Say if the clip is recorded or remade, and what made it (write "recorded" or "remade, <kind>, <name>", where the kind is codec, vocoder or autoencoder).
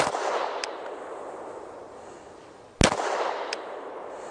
recorded